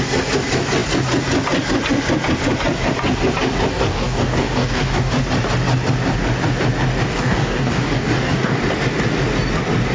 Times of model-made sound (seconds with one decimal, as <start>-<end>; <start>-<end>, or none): 3.7-5.1; 7.1-8.6